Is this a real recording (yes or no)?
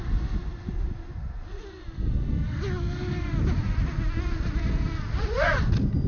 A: yes